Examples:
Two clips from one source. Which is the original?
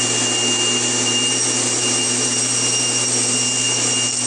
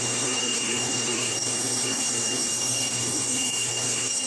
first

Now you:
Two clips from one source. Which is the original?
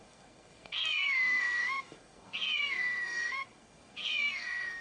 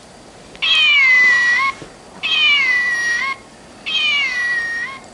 second